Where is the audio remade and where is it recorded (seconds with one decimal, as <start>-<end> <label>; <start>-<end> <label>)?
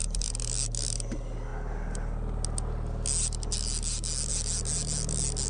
0.0-5.5 recorded